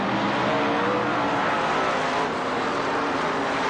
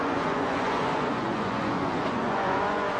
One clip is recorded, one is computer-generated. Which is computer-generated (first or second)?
second